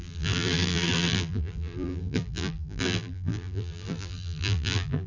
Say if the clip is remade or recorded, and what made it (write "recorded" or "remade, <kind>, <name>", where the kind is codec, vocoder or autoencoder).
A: remade, vocoder, BigVGAN v2